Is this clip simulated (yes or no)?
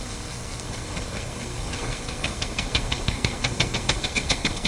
yes